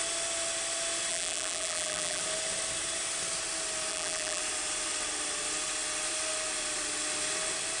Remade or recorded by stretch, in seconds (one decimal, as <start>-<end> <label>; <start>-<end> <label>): 0.0-1.1 recorded; 1.1-2.2 remade; 2.2-3.9 recorded; 3.9-4.4 remade; 4.4-7.8 recorded